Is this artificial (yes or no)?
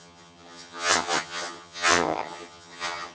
yes